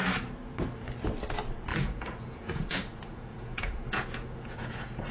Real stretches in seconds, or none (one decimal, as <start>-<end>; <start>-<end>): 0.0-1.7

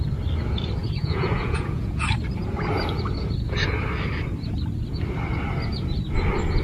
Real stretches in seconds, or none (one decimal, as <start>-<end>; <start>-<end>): 0.0-0.8; 2.0-6.6

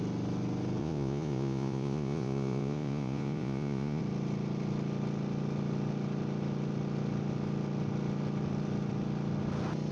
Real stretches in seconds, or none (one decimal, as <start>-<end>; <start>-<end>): 0.0-0.8; 4.0-9.9